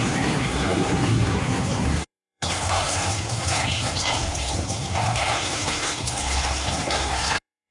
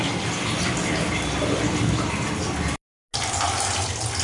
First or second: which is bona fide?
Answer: second